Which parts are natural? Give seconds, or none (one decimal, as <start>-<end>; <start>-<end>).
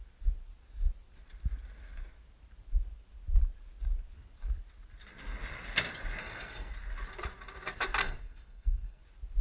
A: 0.0-6.2; 6.7-8.0; 9.0-9.4